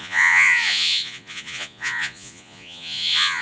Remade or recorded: remade